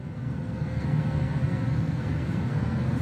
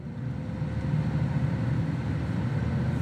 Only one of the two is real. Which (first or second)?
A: second